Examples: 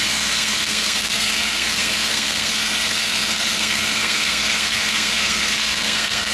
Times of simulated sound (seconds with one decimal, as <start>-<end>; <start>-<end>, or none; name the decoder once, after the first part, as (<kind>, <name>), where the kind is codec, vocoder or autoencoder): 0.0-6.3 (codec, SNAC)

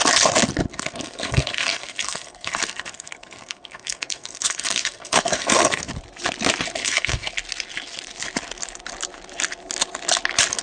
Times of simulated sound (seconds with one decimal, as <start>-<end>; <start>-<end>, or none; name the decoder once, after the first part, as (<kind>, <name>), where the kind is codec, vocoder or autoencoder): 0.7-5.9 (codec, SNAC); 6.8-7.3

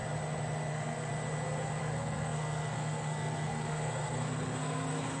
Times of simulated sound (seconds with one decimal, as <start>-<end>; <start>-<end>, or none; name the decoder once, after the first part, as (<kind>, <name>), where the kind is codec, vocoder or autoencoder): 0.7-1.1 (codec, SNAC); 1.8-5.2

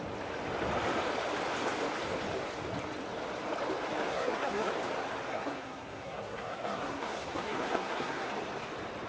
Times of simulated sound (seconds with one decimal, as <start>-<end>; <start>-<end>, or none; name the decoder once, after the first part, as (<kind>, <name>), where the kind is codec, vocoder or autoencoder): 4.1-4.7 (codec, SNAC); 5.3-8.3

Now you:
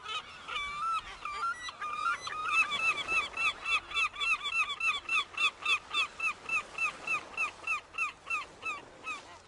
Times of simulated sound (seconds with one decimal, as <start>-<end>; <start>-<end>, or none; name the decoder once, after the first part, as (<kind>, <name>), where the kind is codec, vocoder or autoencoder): none

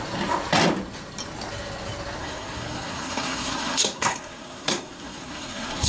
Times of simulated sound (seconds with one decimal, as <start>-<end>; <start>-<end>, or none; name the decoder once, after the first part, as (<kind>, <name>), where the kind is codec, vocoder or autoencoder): 2.2-5.9 (codec, SNAC)

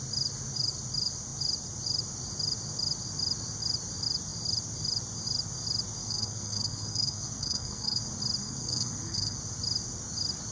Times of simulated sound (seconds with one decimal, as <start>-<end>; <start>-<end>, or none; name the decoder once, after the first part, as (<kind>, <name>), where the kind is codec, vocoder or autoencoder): 6.0-8.0 (codec, SNAC); 8.4-9.4